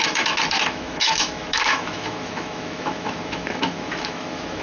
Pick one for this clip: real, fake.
fake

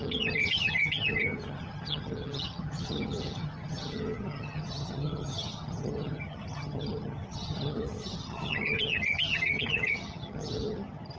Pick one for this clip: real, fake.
fake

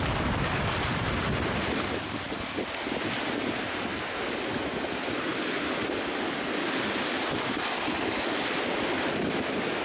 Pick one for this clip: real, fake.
real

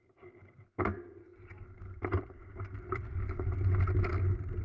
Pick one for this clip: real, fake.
real